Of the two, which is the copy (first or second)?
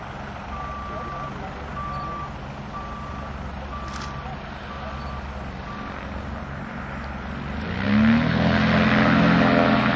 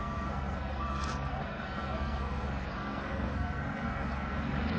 second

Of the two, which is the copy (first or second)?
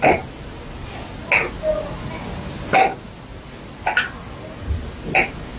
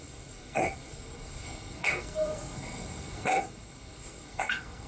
second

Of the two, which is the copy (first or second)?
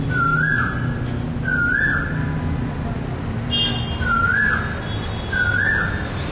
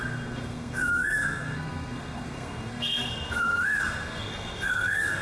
second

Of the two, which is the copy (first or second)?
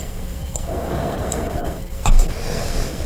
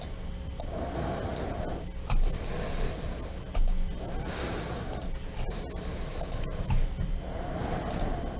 first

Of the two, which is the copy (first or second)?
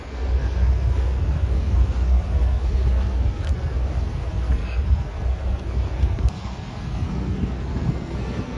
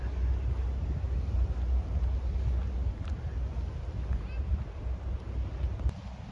first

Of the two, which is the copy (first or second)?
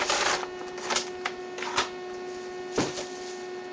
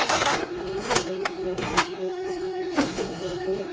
second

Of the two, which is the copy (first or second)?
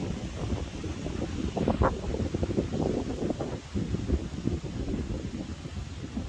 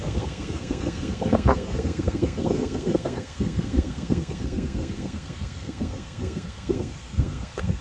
second